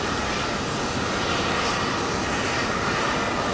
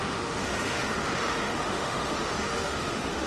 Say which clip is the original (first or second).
first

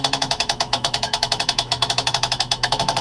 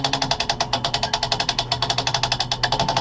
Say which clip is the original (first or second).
second